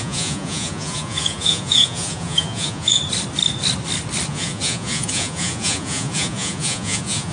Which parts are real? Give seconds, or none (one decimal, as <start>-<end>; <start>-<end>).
3.0-4.3